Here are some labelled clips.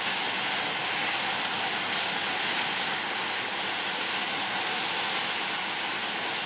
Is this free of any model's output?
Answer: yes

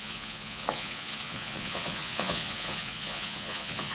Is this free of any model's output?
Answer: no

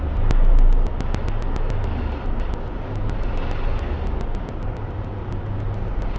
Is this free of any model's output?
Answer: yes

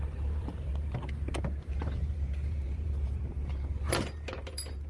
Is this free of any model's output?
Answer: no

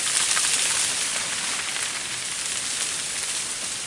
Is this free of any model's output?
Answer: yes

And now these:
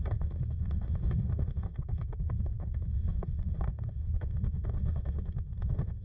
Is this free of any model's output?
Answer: no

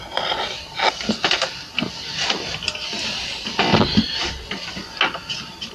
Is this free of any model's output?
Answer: yes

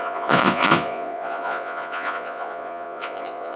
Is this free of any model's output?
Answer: no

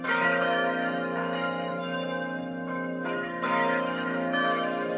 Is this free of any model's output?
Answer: no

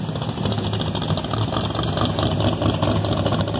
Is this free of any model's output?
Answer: yes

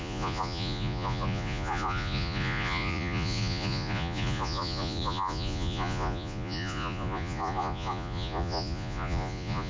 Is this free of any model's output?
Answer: no